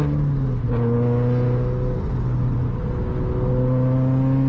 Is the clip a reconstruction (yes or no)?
no